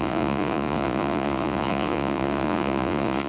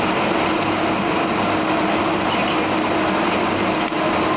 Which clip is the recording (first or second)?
second